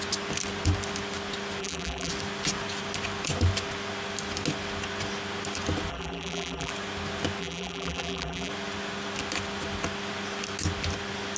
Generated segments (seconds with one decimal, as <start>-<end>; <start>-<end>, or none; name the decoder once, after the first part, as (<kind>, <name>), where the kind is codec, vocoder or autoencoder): 1.6-2.1 (vocoder, BigVGAN v2); 5.9-6.7; 7.4-8.5